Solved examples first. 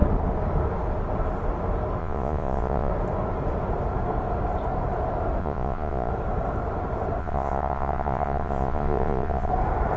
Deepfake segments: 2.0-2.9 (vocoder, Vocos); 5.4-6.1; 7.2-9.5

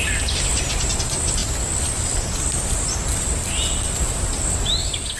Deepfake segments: none

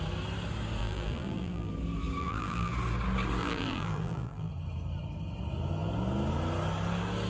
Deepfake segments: 0.8-1.7 (vocoder, BigVGAN v2); 2.2-2.7; 3.4-4.5

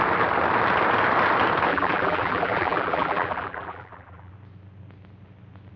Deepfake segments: 1.7-4.3 (vocoder, BigVGAN v2)

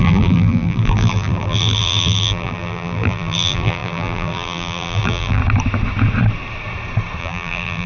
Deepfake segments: 0.0-5.4 (vocoder, BigVGAN v2); 7.2-7.9

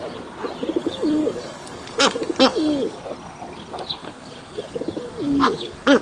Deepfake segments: 0.8-3.0 (codec, DAC); 4.0-6.0

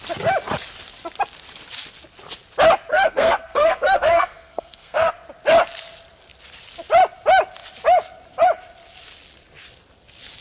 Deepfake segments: 2.9-5.1 (codec, SNAC)

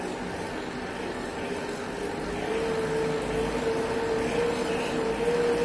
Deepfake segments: none